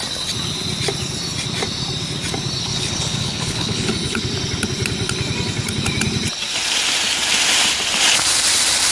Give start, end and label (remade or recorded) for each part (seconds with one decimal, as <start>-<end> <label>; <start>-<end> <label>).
0.0-2.7 recorded; 2.7-3.9 remade; 3.9-8.9 recorded